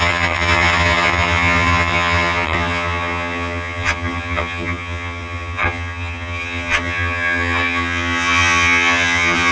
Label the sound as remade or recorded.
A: remade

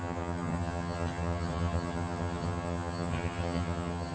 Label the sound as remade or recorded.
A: remade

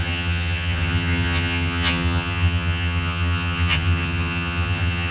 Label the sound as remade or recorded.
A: remade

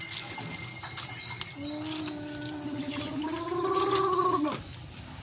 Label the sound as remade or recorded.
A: recorded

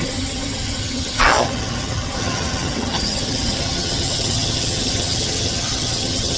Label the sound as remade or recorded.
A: remade